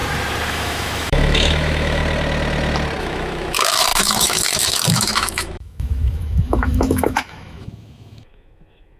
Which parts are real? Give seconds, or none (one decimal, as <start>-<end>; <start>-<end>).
0.0-0.5; 2.0-3.0